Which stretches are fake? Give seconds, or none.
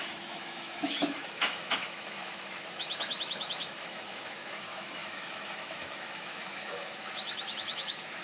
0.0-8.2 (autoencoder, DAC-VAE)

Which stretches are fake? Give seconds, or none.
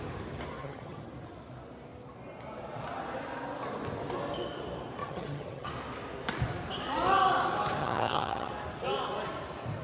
0.6-1.1 (vocoder, HiFi-GAN); 5.0-5.7; 7.8-8.5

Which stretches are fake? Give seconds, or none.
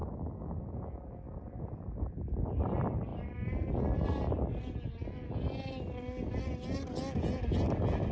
0.0-0.5 (autoencoder, DAC-VAE)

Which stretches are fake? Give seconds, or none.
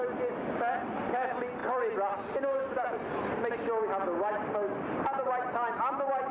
none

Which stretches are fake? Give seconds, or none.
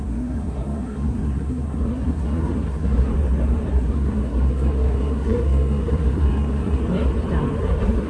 0.0-3.1 (codec, SNAC); 3.7-6.8; 7.6-8.1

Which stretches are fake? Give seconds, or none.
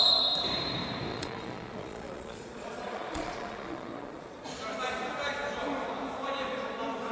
1.1-4.6 (vocoder, Vocos)